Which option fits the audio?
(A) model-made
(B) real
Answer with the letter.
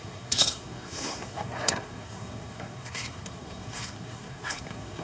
A